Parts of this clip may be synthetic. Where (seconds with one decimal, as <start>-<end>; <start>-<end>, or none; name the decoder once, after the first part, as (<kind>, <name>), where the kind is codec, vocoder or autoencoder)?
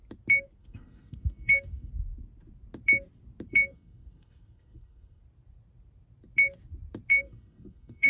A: 0.6-1.9 (codec, SNAC); 3.5-5.2; 7.1-8.1